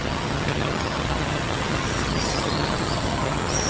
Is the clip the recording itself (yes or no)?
no